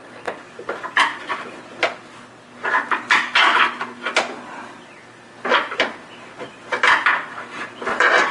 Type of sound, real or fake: real